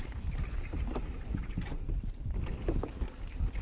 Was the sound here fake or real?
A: real